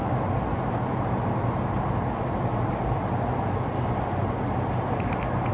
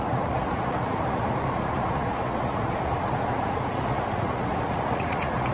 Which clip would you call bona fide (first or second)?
first